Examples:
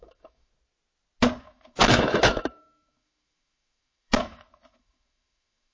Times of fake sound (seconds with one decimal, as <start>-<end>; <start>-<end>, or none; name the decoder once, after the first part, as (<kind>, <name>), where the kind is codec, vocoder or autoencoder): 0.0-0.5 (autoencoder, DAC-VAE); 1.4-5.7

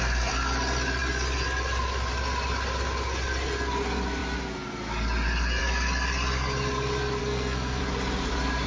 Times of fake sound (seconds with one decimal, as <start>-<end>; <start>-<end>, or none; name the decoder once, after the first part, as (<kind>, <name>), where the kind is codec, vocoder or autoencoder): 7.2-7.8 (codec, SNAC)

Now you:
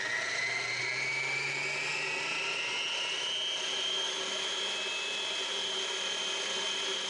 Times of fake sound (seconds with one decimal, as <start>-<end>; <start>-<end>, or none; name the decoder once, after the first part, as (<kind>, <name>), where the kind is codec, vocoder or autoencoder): none

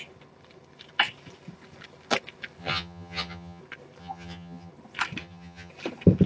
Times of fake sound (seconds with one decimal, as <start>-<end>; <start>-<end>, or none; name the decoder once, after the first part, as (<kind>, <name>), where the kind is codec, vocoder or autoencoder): 2.6-3.6 (vocoder, HiFi-GAN); 4.0-4.7; 5.2-5.7